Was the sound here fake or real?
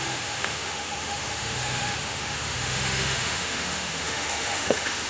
fake